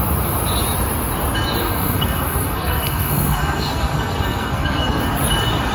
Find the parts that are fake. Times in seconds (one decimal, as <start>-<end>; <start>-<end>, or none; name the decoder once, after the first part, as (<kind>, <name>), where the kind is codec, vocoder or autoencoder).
1.6-5.0 (codec, SNAC)